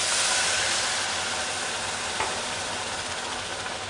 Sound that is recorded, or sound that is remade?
recorded